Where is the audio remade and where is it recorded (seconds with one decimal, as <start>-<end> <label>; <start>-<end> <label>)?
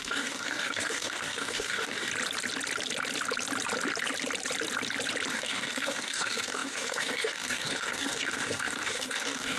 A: 0.0-2.1 remade; 2.1-5.3 recorded; 5.3-9.6 remade